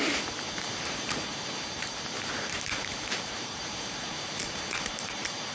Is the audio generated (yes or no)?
yes